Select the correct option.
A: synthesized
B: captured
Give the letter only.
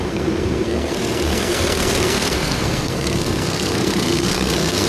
A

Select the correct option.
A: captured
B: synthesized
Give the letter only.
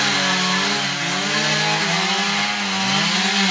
A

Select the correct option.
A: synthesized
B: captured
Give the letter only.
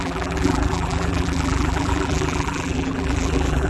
A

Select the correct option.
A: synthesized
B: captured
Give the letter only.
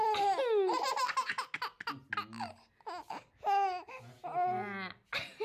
B